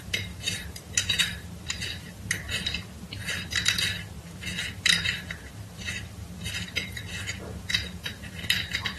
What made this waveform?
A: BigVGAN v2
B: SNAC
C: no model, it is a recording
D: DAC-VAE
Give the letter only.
A